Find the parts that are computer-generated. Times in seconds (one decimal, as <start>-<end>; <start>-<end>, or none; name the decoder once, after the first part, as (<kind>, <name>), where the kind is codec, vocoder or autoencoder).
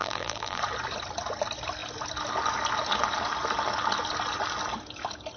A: 0.0-0.6 (vocoder, BigVGAN v2)